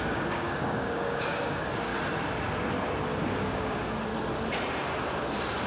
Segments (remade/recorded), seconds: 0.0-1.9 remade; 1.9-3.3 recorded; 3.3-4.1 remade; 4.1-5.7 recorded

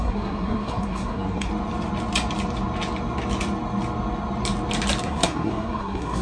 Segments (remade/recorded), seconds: 0.0-1.5 remade; 1.5-5.0 recorded; 5.0-6.2 remade

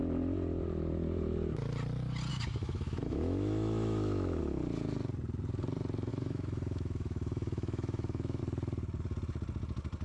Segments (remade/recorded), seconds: 0.0-2.3 recorded; 2.3-4.4 remade; 4.4-6.1 recorded; 6.1-8.4 remade; 8.4-10.0 recorded

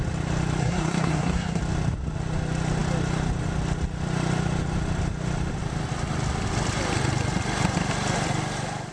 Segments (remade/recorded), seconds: 0.0-0.6 recorded; 0.6-1.6 remade; 1.6-8.9 recorded

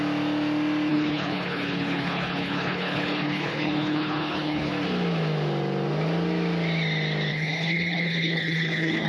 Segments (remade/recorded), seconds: 0.0-0.9 recorded; 0.9-4.7 remade; 4.7-7.3 recorded; 7.3-9.1 remade

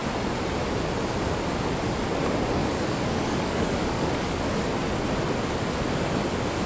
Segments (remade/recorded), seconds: 0.0-2.6 recorded; 2.6-4.7 remade; 4.7-6.7 recorded